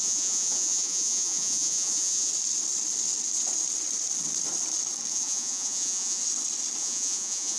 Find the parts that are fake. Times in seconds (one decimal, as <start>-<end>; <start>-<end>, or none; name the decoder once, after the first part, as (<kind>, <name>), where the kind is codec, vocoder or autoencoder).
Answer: 0.0-2.3 (vocoder, Vocos); 5.1-6.2; 6.8-7.6